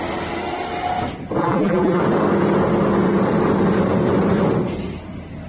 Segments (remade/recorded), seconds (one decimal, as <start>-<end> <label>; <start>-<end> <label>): 0.0-1.4 recorded; 1.4-2.0 remade; 2.0-5.5 recorded